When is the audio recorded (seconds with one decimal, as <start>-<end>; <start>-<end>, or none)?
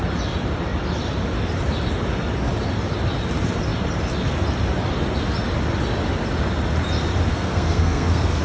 0.0-7.3